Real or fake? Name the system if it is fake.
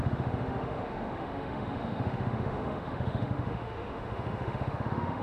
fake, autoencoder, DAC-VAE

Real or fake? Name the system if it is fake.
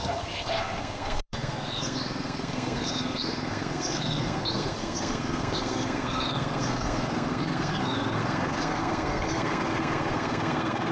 fake, codec, SNAC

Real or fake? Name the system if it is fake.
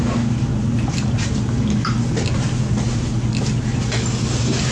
real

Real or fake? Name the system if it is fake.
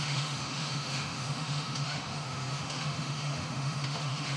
fake, autoencoder, DAC-VAE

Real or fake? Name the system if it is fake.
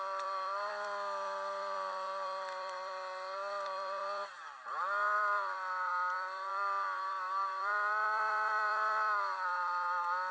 fake, vocoder, BigVGAN v2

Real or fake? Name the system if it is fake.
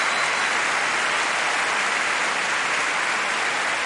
real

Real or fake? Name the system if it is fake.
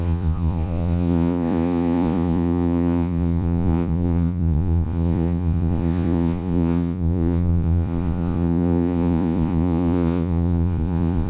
fake, vocoder, Vocos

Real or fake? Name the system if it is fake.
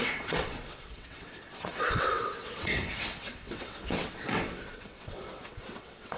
fake, vocoder, WaveNeXt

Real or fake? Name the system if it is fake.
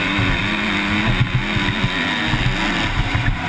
real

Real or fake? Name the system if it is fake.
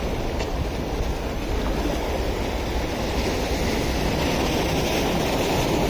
real